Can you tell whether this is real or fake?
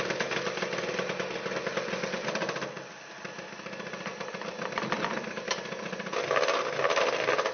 real